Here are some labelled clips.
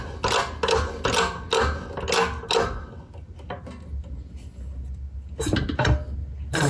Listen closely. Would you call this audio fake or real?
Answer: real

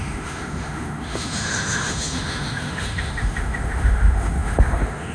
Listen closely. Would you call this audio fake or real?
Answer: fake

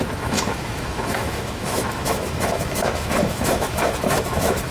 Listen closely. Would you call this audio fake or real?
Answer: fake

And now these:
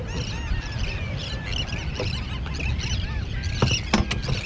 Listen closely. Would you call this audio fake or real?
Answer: real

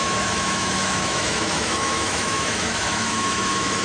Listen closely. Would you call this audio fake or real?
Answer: fake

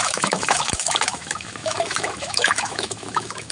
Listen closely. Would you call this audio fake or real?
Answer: fake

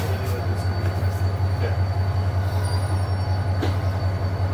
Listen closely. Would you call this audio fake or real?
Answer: real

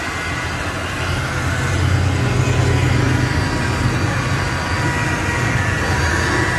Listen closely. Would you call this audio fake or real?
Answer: real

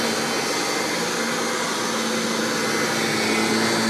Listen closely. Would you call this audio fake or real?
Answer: real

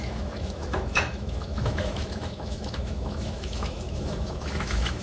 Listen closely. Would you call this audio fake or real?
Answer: fake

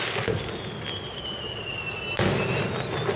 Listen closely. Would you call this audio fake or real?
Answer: real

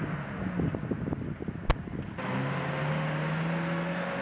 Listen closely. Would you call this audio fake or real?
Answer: real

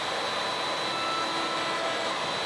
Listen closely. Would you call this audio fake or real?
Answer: real